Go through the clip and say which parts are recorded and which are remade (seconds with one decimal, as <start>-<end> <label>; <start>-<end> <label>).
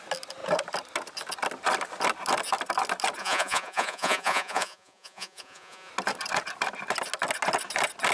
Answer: 0.0-3.2 recorded; 3.2-5.9 remade; 5.9-8.1 recorded